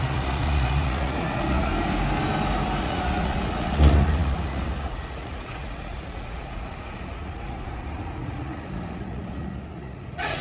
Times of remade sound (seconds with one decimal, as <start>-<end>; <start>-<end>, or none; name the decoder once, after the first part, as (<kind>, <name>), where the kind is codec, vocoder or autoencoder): 0.0-1.7 (vocoder, Vocos); 2.8-10.4